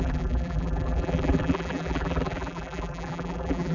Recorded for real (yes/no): no